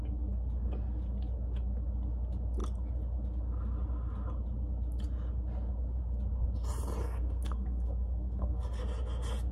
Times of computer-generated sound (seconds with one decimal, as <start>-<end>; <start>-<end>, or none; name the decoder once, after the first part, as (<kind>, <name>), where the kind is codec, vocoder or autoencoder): 7.0-8.8 (codec, SNAC)